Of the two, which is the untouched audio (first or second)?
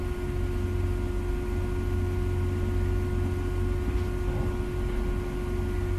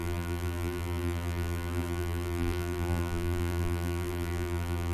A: first